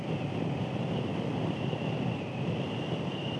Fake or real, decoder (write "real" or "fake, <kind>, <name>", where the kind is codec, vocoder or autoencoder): real